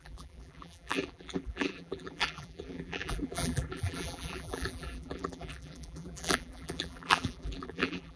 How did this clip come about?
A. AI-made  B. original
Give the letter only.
A